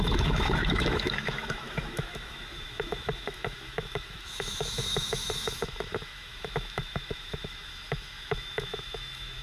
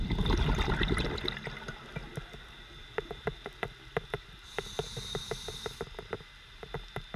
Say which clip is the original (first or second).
second